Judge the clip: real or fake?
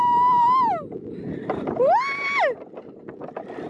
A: real